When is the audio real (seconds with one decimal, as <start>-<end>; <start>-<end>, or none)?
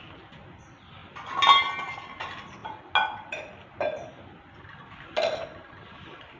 0.0-6.4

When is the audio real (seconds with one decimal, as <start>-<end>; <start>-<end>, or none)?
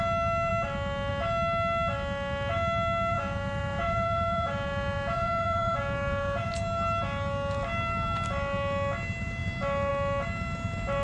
0.0-3.1; 6.5-11.0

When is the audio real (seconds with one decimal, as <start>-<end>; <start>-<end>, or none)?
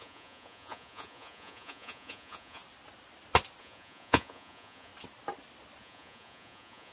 2.6-3.6; 4.9-5.8